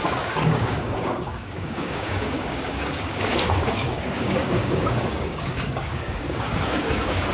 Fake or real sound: fake